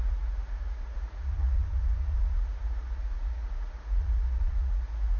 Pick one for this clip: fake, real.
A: fake